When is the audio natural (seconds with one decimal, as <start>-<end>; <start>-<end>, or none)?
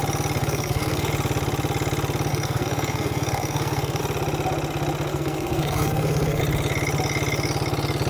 0.0-0.4; 1.1-2.3; 4.0-5.1; 6.4-8.1